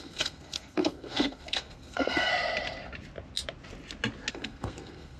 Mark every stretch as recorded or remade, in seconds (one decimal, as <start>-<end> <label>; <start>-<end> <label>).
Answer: 0.0-2.3 remade; 2.3-4.3 recorded; 4.3-5.2 remade